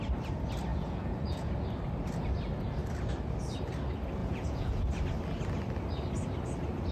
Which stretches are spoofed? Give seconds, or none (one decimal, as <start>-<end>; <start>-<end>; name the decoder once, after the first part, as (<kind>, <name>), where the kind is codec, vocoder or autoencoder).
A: 0.7-1.5 (vocoder, Vocos); 4.2-4.8